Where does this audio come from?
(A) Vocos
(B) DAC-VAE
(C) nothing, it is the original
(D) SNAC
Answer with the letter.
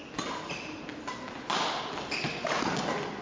C